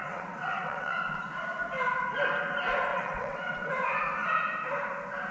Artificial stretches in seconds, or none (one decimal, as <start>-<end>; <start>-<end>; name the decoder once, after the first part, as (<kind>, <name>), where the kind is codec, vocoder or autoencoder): 0.0-1.0 (vocoder, WaveNeXt); 2.9-3.7

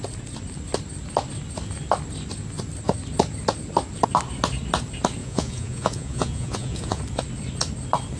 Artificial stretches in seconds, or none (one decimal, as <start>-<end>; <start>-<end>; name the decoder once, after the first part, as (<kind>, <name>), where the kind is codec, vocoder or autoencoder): 5.2-7.0 (vocoder, Vocos)

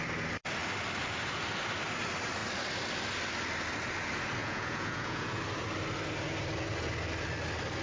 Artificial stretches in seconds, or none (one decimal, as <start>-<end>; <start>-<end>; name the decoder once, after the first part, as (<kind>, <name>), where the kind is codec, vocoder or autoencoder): 4.4-5.4 (vocoder, Vocos)

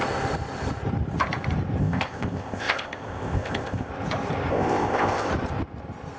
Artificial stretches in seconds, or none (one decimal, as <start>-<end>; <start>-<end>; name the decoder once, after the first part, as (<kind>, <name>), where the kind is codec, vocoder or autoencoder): 1.8-3.9 (codec, ZipCodec); 4.5-5.3

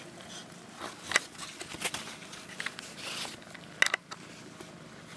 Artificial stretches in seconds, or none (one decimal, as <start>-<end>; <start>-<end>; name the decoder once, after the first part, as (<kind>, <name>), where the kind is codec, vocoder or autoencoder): none

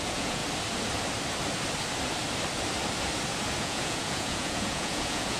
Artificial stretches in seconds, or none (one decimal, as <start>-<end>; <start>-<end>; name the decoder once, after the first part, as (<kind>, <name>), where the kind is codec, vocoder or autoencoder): 0.0-0.4 (vocoder, Vocos); 3.6-5.4